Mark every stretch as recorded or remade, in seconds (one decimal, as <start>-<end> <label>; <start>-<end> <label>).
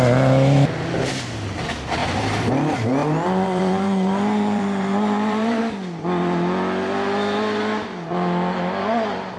0.0-2.0 recorded; 2.0-2.5 remade; 2.5-3.0 recorded; 3.0-5.6 remade; 5.6-9.4 recorded